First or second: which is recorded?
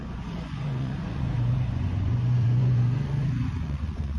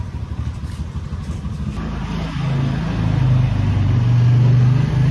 second